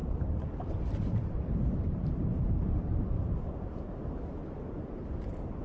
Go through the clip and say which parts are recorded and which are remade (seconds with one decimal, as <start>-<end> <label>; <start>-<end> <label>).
0.0-3.4 remade; 3.4-5.6 recorded